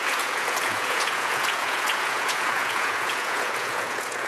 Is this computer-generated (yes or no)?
yes